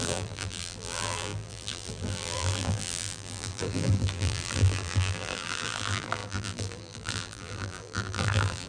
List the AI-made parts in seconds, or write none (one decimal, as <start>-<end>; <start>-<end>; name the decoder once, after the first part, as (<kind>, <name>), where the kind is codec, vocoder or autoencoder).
0.0-8.7 (vocoder, BigVGAN v2)